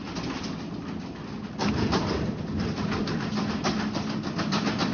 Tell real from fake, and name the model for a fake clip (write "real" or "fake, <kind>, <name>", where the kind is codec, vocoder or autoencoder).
real